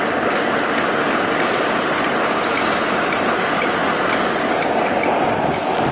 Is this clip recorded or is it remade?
recorded